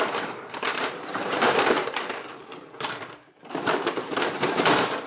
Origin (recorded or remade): remade